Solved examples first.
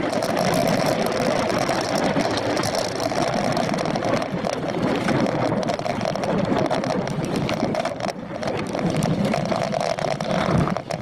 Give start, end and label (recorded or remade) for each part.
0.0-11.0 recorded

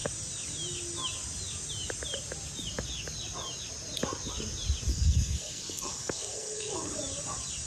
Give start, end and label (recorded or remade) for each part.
0.0-4.9 recorded; 4.9-6.9 remade; 6.9-7.7 recorded

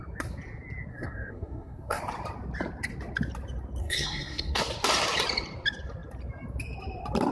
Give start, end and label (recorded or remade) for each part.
0.0-0.9 recorded; 0.9-2.0 remade; 2.0-3.8 recorded; 3.8-4.6 remade; 4.6-7.3 recorded

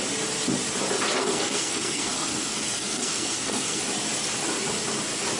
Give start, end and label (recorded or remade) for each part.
0.0-1.2 recorded; 1.2-3.8 remade; 3.8-5.4 recorded